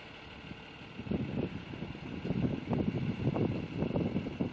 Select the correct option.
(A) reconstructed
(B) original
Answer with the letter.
B